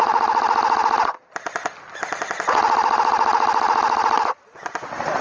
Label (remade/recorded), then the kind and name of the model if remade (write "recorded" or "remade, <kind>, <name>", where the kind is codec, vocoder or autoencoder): recorded